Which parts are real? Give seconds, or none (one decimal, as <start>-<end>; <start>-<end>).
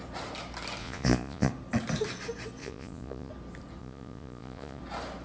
0.0-0.8; 1.5-2.6; 3.3-3.8; 4.8-5.2